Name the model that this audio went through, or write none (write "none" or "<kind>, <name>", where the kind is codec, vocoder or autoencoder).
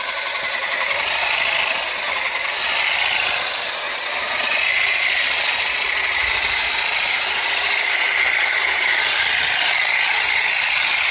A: none